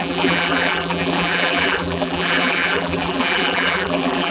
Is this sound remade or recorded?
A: remade